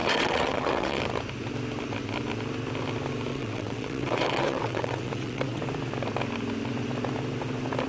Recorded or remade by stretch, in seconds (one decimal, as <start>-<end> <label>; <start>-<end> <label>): 0.0-1.0 remade; 1.0-3.3 recorded; 3.3-5.6 remade; 5.6-7.9 recorded

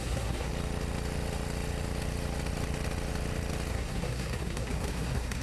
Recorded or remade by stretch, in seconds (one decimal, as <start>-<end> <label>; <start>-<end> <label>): 0.0-0.5 remade; 0.5-3.7 recorded; 3.7-5.4 remade

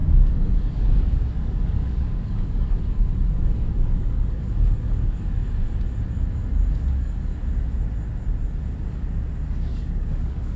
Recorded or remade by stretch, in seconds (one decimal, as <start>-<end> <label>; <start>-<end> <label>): 0.0-5.4 remade; 5.4-6.7 recorded; 6.7-7.3 remade; 7.3-9.6 recorded; 9.6-10.6 remade

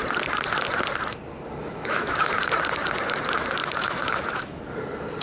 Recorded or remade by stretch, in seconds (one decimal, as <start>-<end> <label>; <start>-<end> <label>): 0.0-1.6 recorded; 1.6-2.3 remade; 2.3-3.6 recorded; 3.6-4.6 remade; 4.6-5.2 recorded